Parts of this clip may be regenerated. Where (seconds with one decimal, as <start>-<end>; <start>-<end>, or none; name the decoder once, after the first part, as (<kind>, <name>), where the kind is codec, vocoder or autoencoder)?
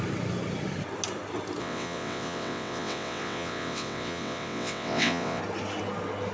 1.6-5.4 (vocoder, WaveNeXt)